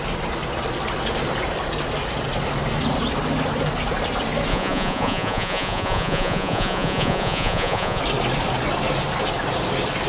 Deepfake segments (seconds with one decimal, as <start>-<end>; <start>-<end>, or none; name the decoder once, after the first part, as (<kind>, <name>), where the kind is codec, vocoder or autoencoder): 4.5-8.0 (vocoder, Vocos)